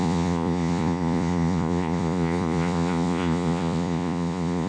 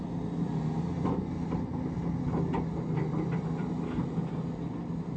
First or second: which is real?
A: second